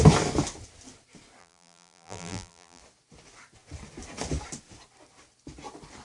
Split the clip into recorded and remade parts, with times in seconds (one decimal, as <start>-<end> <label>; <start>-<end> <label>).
0.0-1.4 recorded; 1.4-2.8 remade; 2.8-6.0 recorded